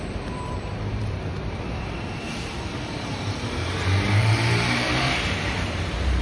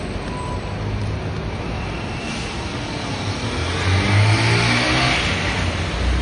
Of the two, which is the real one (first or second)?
second